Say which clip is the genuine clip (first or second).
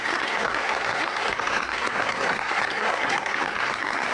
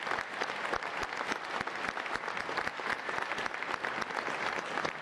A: second